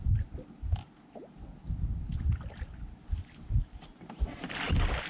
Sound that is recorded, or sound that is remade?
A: recorded